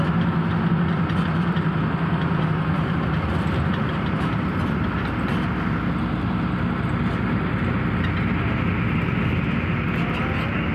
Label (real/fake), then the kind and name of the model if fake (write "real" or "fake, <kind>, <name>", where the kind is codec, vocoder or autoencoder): real